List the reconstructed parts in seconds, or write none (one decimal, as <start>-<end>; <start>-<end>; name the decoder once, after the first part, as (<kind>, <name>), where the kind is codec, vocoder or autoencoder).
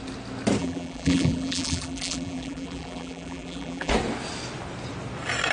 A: 0.6-3.9 (vocoder, BigVGAN v2)